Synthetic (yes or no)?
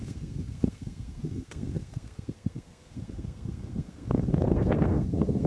yes